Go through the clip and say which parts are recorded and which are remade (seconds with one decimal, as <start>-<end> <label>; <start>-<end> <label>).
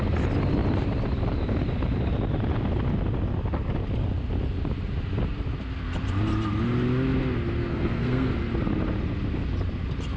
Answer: 0.0-7.6 recorded; 7.6-8.3 remade; 8.3-10.2 recorded